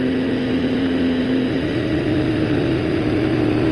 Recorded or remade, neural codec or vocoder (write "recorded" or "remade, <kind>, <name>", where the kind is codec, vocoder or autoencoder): remade, vocoder, BigVGAN v2